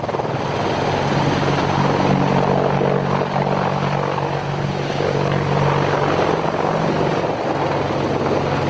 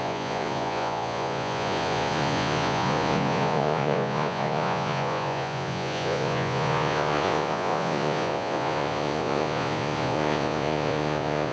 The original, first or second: first